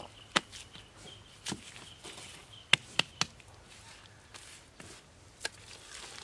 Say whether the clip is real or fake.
real